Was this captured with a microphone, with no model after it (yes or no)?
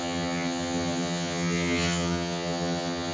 no